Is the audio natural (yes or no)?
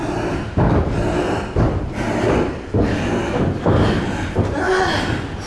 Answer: yes